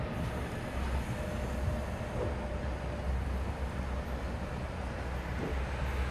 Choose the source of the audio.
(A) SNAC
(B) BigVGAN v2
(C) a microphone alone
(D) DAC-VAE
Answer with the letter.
C